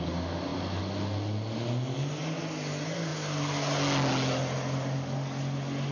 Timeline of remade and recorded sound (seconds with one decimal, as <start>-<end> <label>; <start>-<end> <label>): 0.0-5.9 recorded